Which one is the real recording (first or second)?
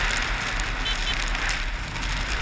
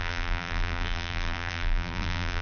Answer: first